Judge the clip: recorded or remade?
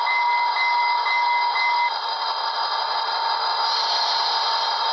recorded